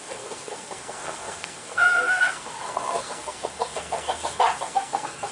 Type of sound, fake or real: fake